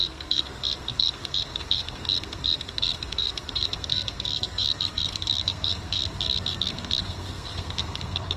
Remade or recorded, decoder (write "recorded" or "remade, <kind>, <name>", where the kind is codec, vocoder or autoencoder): remade, codec, SNAC